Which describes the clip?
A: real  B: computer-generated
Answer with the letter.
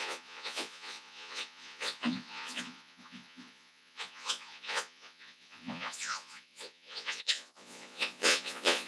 B